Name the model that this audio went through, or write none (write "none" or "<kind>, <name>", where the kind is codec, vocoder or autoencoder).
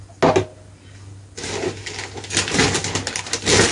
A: none